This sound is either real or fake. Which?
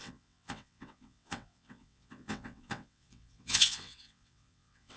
fake